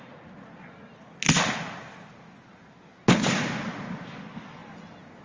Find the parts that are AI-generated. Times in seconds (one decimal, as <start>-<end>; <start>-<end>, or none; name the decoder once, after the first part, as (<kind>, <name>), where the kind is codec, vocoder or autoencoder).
none